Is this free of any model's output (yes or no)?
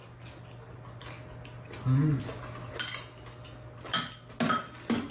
yes